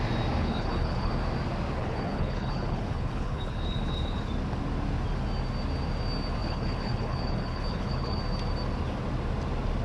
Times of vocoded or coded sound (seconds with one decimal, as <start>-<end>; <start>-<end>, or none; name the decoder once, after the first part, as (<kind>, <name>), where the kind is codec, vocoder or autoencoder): 0.4-1.1 (codec, HILCodec); 1.8-4.3; 6.4-8.2